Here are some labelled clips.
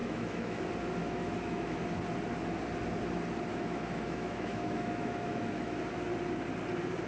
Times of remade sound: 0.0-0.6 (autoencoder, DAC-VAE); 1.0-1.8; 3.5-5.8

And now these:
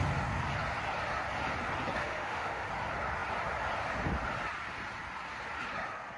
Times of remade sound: 2.0-2.7 (autoencoder, DAC-VAE)

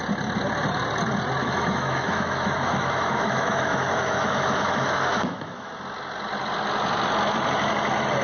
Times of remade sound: 1.4-5.7 (autoencoder, DAC-VAE)

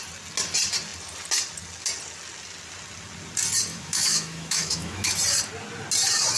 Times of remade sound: 3.7-5.1 (autoencoder, DAC-VAE)

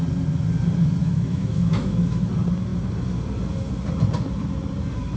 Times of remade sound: 1.0-2.3 (autoencoder, DAC-VAE)

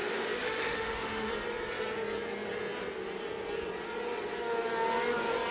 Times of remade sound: 0.0-1.3 (autoencoder, DAC-VAE)

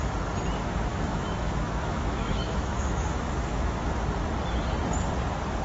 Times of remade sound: 0.9-3.9 (autoencoder, DAC-VAE)

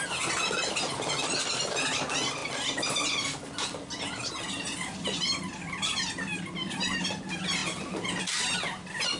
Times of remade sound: none